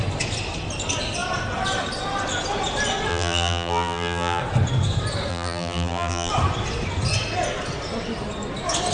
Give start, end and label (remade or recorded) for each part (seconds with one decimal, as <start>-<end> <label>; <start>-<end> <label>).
0.0-3.1 recorded; 3.1-4.4 remade; 4.4-5.3 recorded; 5.3-6.3 remade; 6.3-8.9 recorded